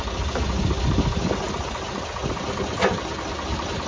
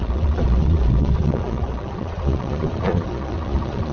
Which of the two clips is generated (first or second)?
second